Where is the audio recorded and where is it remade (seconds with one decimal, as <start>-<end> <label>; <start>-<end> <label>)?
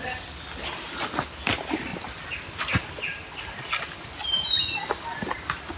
0.0-5.8 recorded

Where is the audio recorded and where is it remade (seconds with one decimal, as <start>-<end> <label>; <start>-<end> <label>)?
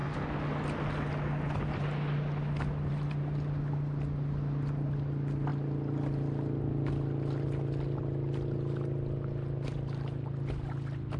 0.0-11.2 recorded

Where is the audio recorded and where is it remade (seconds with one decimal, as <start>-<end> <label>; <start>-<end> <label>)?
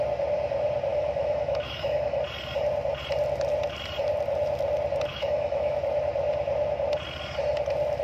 0.0-0.9 recorded; 0.9-2.2 remade; 2.2-5.1 recorded; 5.1-5.8 remade; 5.8-8.0 recorded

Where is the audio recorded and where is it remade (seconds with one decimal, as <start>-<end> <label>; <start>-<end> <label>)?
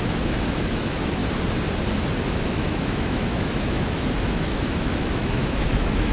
0.0-1.2 remade; 1.2-2.3 recorded; 2.3-6.1 remade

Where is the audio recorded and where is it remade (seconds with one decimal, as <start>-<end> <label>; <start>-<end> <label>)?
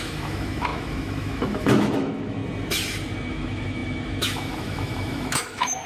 0.0-2.4 remade; 2.4-3.3 recorded; 3.3-5.9 remade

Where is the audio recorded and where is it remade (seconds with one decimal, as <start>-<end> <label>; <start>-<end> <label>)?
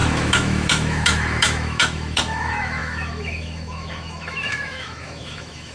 0.0-5.7 remade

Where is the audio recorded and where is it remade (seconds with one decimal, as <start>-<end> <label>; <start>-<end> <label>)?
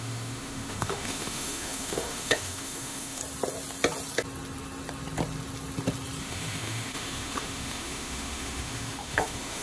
0.0-3.2 remade; 3.2-6.2 recorded; 6.2-9.6 remade